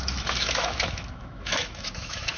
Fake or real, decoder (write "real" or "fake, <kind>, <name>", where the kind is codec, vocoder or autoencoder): fake, autoencoder, DAC-VAE